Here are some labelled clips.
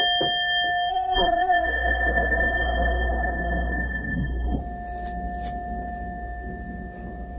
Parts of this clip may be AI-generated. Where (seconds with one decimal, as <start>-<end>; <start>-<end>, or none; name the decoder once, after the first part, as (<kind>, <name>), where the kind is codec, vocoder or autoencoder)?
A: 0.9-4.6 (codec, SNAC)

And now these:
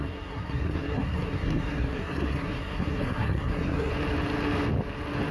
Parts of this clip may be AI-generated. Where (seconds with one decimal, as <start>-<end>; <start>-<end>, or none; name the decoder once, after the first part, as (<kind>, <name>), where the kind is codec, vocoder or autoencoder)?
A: 0.0-3.9 (codec, SNAC)

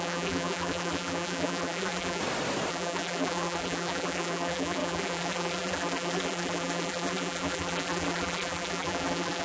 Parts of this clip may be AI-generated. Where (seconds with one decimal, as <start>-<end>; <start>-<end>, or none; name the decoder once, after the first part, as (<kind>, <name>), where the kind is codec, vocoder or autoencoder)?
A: 0.0-2.2 (vocoder, BigVGAN v2); 2.7-9.4